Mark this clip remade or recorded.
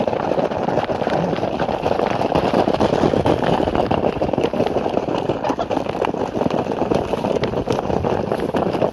recorded